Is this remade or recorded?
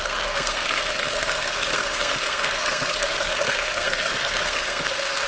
remade